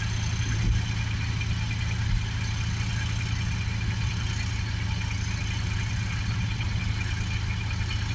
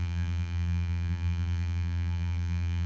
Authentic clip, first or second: first